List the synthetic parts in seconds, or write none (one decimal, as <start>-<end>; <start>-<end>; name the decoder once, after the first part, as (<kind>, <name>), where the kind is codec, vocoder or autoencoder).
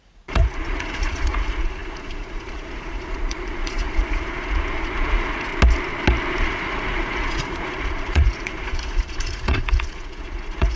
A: 0.0-5.5 (vocoder, Vocos); 6.4-10.8